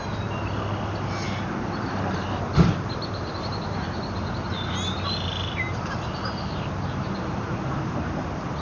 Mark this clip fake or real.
real